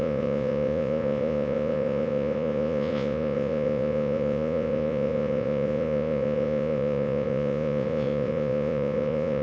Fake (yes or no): yes